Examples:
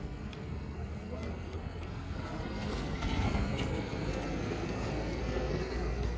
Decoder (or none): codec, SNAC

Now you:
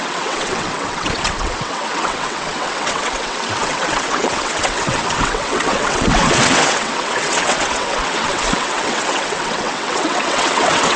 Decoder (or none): vocoder, WaveNeXt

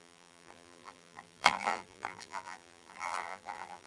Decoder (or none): vocoder, BigVGAN v2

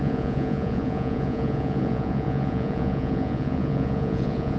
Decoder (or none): vocoder, Vocos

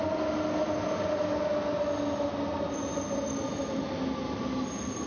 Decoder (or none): none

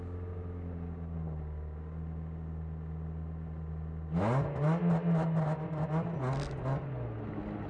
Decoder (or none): none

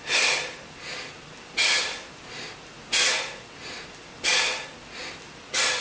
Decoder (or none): none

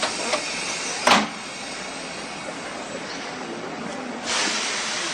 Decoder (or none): vocoder, BigVGAN v2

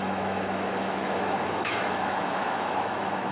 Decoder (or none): autoencoder, DAC-VAE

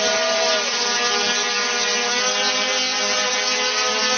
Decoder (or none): none